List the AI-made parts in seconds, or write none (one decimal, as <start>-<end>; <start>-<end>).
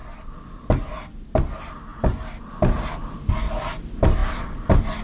1.9-2.5